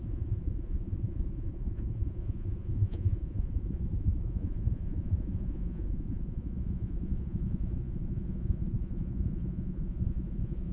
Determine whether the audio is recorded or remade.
remade